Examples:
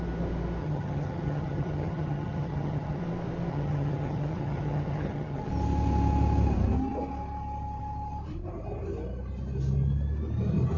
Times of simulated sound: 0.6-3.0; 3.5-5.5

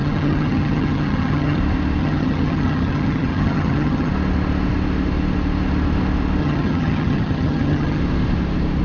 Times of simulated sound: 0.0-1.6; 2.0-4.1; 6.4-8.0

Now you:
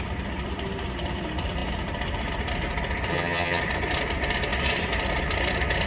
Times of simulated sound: 3.1-3.6

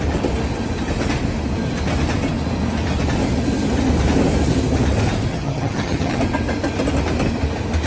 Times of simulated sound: 5.3-6.2

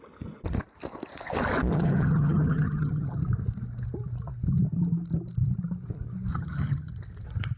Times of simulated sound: 1.7-3.2; 6.3-6.9

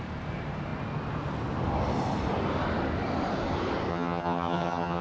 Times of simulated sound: 3.9-5.0

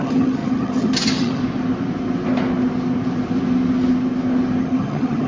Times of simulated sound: 0.0-1.4; 4.6-5.3